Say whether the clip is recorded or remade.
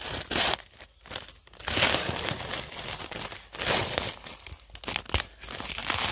recorded